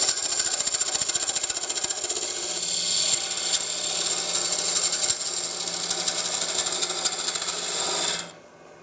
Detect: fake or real real